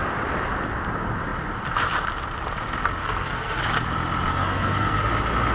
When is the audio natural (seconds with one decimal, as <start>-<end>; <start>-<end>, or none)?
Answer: 0.0-3.0; 3.6-4.3; 5.1-5.5

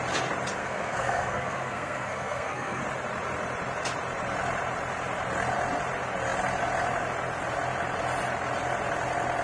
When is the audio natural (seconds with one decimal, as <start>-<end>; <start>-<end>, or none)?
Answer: 0.0-0.6; 2.8-9.4

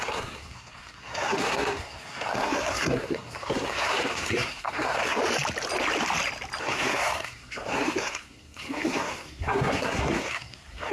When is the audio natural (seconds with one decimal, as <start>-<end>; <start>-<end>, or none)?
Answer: 5.2-6.6

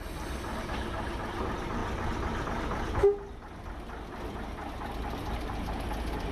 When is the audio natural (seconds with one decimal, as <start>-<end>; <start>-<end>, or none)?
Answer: 0.0-6.3

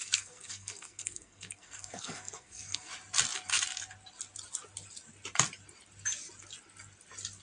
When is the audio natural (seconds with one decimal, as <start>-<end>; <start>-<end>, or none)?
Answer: 2.9-7.4

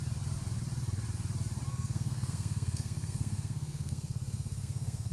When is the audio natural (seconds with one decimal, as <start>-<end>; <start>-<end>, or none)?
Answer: 0.0-1.7

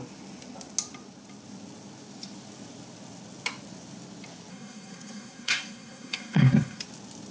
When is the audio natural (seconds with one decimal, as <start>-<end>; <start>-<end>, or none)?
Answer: 0.0-4.5; 6.8-7.3